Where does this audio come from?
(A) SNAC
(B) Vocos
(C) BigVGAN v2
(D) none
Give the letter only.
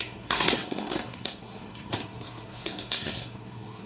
A